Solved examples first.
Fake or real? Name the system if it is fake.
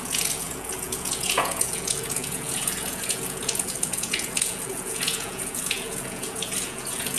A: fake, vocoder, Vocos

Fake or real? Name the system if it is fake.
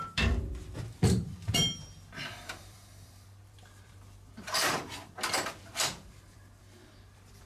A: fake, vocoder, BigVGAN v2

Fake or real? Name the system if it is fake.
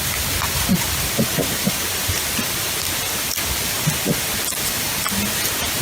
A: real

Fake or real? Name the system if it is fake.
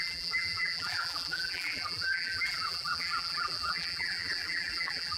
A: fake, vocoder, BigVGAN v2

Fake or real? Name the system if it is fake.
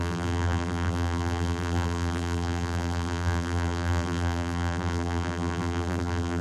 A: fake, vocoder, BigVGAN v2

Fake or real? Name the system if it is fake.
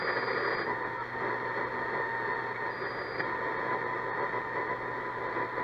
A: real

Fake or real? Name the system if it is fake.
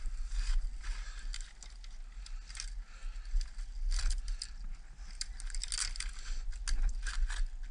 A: real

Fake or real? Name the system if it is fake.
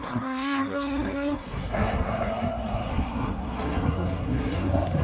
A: fake, codec, SNAC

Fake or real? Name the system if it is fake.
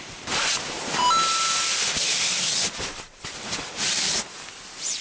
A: real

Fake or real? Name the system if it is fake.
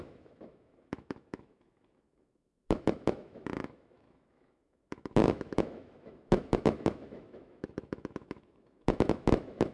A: fake, autoencoder, DAC-VAE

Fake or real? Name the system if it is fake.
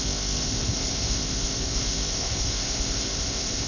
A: fake, codec, ZipCodec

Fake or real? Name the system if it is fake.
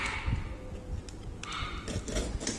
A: real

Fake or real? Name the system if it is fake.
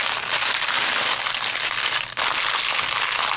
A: real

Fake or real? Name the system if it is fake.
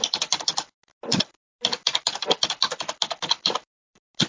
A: real